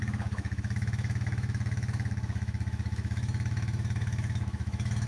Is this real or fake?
fake